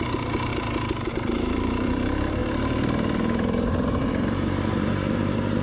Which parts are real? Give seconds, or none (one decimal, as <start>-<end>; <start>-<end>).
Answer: 0.5-1.1